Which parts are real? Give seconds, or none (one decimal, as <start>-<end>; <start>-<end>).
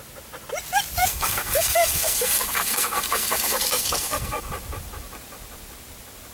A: 0.0-1.0; 4.5-6.3